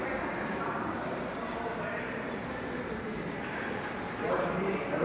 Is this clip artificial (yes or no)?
yes